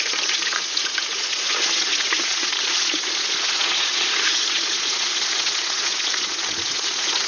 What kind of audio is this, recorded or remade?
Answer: remade